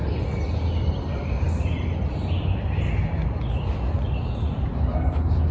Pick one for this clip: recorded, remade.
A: recorded